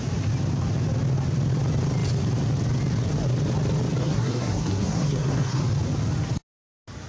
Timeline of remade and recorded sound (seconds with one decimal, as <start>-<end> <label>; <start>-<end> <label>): 0.0-4.0 recorded; 4.0-5.6 remade; 5.6-7.1 recorded